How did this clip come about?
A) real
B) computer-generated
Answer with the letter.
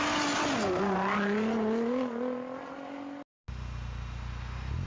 A